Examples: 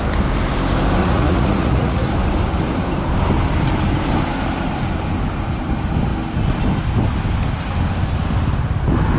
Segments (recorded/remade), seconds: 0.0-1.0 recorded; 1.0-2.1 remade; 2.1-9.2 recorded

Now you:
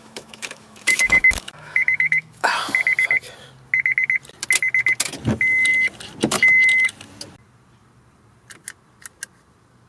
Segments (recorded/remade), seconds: 0.0-2.5 remade; 2.5-9.9 recorded